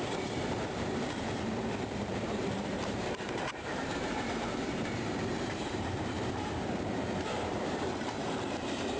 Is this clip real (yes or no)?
no